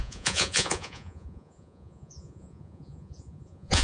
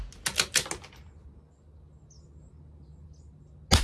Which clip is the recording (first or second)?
second